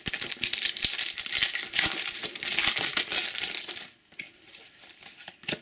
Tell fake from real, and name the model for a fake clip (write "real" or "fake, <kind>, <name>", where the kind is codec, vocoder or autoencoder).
fake, vocoder, BigVGAN v2